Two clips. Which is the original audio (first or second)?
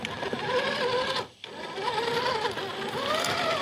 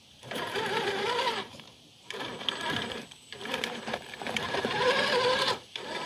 first